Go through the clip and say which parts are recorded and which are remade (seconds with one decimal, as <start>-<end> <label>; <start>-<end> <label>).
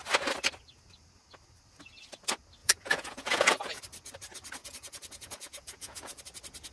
0.0-2.6 recorded; 2.6-3.8 remade; 3.8-4.6 recorded; 4.6-6.2 remade; 6.2-6.7 recorded